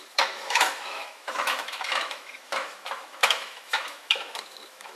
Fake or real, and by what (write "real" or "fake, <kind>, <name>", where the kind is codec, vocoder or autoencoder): fake, autoencoder, DAC-VAE